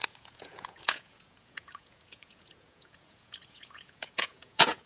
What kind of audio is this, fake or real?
fake